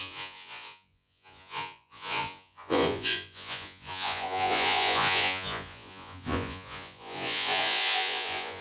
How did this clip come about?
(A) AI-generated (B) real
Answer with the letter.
A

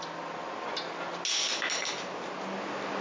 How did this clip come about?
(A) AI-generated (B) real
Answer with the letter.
B